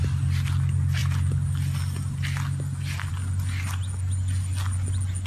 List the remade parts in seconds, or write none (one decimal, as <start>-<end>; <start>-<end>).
none